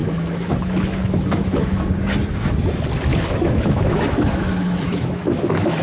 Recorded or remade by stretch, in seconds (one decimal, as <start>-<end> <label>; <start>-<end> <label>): 0.0-1.9 remade; 1.9-3.1 recorded; 3.1-5.8 remade